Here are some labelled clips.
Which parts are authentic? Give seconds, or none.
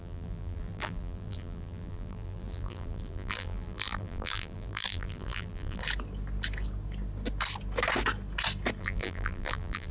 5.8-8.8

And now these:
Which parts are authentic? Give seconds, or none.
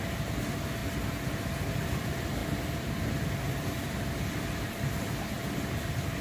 0.0-2.4